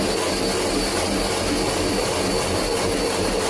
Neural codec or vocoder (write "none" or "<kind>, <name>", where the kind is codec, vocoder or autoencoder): none